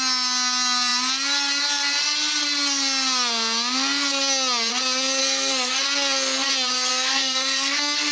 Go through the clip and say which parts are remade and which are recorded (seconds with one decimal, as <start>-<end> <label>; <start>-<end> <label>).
0.0-5.2 recorded; 5.2-5.8 remade; 5.8-6.9 recorded; 6.9-8.1 remade